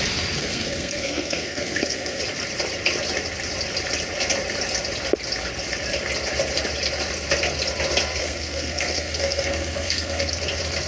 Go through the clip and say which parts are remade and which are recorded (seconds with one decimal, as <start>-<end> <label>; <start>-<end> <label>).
0.0-0.4 recorded; 0.4-2.2 remade; 2.2-8.2 recorded; 8.2-10.3 remade; 10.3-10.9 recorded